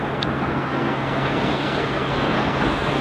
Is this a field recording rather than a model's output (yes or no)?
no